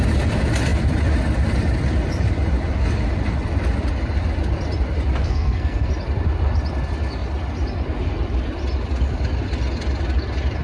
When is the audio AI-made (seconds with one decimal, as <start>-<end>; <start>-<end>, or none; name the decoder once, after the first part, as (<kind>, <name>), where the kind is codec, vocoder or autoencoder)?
5.2-5.9 (codec, SNAC)

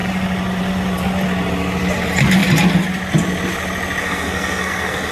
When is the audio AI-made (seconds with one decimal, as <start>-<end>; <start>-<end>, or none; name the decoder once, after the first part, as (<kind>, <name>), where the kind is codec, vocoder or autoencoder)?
4.0-5.1 (codec, SNAC)

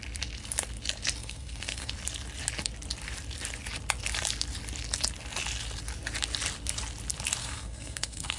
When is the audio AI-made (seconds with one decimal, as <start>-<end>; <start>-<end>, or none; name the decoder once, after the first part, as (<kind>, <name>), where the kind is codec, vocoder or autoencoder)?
1.2-1.9 (codec, SNAC); 7.4-8.4

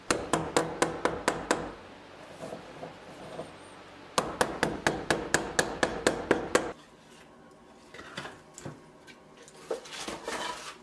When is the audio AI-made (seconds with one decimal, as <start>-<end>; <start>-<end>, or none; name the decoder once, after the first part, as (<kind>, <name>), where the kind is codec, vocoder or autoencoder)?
none

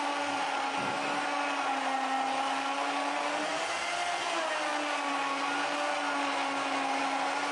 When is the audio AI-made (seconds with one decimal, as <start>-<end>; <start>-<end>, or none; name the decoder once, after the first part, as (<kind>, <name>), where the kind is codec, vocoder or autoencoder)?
none

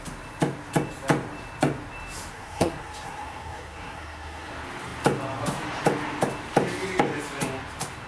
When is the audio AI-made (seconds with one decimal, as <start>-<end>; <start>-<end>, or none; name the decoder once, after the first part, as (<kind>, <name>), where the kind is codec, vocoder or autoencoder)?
2.3-4.5 (codec, SNAC)